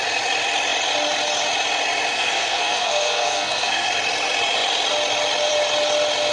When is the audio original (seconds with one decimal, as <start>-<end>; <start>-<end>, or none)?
0.0-2.1; 3.9-6.3